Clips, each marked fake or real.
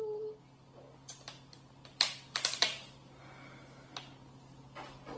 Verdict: real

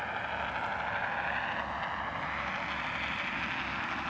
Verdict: real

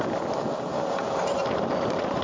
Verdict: real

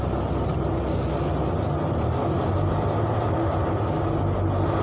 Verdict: real